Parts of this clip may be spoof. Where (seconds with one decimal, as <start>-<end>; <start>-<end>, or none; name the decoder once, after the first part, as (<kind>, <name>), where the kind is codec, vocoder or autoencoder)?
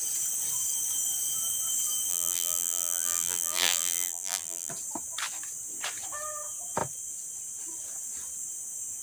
2.1-4.7 (vocoder, BigVGAN v2)